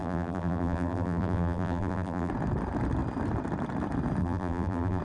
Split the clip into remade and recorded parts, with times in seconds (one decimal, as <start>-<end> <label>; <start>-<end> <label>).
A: 0.0-2.3 remade; 2.3-4.2 recorded; 4.2-5.0 remade